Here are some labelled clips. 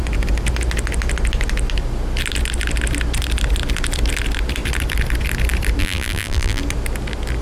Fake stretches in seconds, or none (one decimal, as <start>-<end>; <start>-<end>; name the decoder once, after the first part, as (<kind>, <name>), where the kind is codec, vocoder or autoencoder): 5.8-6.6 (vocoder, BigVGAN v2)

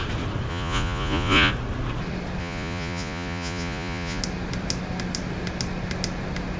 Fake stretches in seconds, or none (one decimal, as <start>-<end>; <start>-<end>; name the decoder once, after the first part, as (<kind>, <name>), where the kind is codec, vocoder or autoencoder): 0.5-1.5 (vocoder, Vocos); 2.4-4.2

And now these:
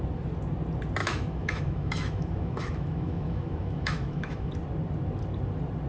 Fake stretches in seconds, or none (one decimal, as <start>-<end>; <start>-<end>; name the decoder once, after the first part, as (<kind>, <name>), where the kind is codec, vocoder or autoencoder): 1.0-4.5 (autoencoder, DAC-VAE)

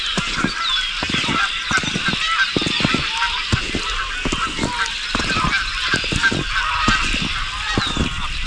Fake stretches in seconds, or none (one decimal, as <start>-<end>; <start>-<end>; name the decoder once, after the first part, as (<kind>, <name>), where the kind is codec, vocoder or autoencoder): none

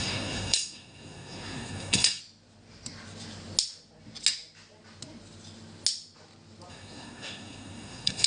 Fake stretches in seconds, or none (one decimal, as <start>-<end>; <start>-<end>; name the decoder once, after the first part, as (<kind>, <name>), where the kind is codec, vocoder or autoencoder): 0.0-2.2 (codec, SNAC); 6.7-8.3

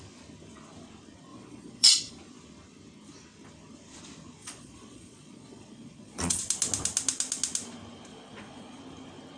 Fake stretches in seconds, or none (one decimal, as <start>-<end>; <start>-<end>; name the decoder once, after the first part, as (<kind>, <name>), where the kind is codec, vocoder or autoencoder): 1.3-2.1 (vocoder, Vocos); 4.4-6.4; 8.1-8.8

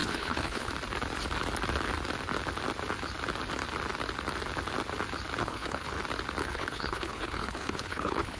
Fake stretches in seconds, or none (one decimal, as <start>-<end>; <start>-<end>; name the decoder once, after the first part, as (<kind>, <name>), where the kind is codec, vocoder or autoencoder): 0.0-0.7 (codec, HILCodec); 5.4-6.0; 6.4-8.4